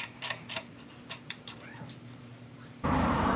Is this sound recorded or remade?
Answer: remade